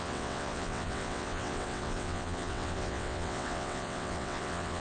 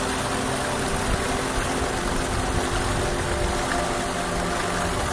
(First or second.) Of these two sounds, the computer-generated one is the first